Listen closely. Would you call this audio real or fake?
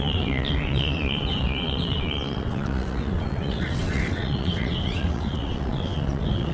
fake